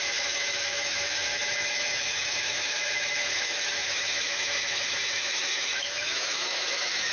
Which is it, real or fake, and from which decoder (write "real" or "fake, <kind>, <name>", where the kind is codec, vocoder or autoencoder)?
fake, autoencoder, DAC-VAE